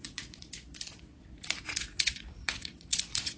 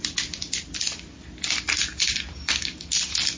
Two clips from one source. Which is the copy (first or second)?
first